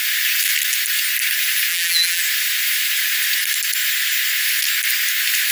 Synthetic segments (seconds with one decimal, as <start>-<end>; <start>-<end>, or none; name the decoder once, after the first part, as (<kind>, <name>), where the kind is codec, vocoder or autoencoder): 1.7-2.2 (vocoder, BigVGAN v2)